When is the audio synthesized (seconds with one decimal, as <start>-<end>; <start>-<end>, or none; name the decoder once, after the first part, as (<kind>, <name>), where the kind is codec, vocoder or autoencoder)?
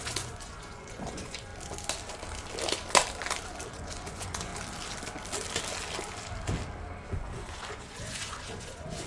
0.0-1.5 (vocoder, Vocos); 3.7-4.5; 7.1-9.1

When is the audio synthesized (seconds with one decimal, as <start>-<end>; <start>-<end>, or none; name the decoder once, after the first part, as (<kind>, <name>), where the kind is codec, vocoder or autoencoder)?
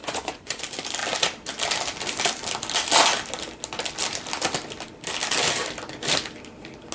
0.0-0.6 (vocoder, Vocos)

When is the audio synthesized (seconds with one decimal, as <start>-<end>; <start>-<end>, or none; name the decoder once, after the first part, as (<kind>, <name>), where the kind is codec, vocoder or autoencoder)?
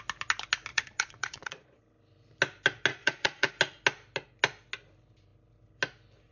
0.7-1.8 (vocoder, Vocos); 2.9-3.5